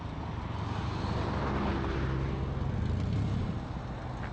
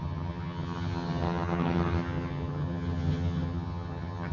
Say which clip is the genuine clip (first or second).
first